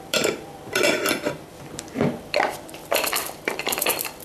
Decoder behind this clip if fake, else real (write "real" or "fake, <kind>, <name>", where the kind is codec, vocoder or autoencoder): fake, vocoder, BigVGAN v2